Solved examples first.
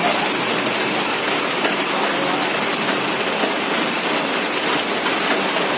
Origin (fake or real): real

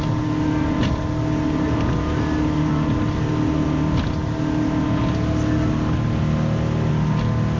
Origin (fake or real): real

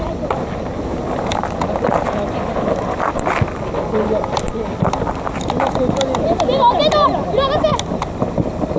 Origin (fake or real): real